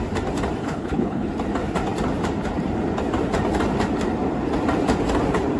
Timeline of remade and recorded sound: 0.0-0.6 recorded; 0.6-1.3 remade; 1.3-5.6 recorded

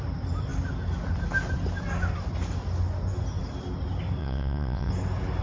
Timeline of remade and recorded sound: 0.0-4.2 recorded; 4.2-4.9 remade; 4.9-5.4 recorded